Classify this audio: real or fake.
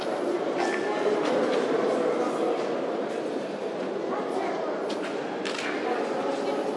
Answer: real